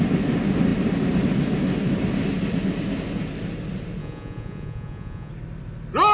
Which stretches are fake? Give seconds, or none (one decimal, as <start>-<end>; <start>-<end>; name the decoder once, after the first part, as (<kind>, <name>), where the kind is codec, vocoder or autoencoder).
4.0-5.3 (vocoder, Vocos)